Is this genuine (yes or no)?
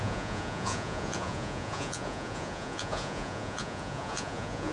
no